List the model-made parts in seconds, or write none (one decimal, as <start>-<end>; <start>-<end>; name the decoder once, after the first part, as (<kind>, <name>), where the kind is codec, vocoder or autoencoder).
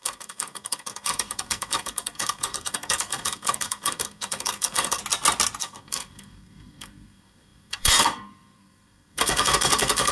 0.0-5.0 (codec, SNAC); 5.6-10.1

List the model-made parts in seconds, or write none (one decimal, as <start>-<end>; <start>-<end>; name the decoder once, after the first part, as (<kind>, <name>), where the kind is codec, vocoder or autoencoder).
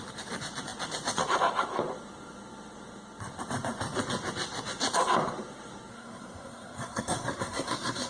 5.9-8.1 (codec, SNAC)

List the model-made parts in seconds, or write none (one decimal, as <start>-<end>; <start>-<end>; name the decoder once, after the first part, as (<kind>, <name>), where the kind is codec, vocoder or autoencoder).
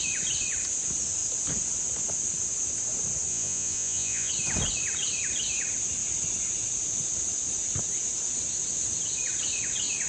3.3-4.3 (vocoder, Vocos)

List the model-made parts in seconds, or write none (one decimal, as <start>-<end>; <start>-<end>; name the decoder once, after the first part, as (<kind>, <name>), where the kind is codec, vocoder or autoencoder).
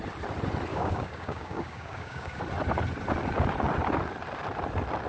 0.7-2.4 (codec, DAC)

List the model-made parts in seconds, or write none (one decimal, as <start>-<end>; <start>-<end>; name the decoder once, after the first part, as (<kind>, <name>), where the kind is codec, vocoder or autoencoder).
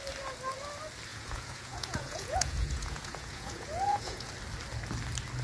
1.1-4.3 (vocoder, Vocos)